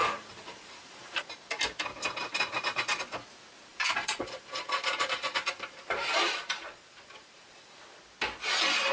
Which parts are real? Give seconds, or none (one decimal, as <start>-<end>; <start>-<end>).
1.4-3.7; 7.8-8.9